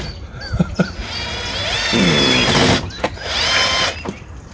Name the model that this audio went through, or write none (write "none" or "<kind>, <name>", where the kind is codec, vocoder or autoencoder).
none